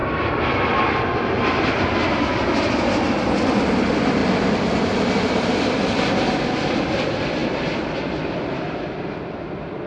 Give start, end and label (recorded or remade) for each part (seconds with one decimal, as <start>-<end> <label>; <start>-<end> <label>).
0.0-9.9 recorded